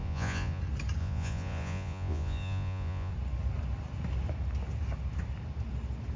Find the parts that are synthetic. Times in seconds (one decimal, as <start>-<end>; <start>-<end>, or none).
0.0-0.6; 1.0-3.1